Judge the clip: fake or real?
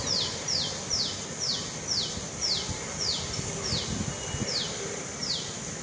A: real